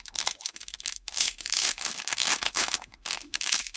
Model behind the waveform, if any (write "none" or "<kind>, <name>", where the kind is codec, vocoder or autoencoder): autoencoder, DAC-VAE